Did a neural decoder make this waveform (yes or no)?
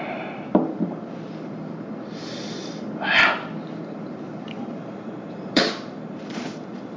yes